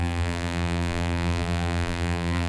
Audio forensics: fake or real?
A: fake